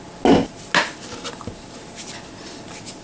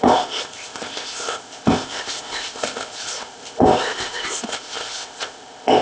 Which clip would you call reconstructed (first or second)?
second